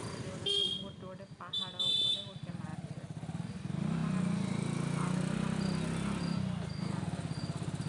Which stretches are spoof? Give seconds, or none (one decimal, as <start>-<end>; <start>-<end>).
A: none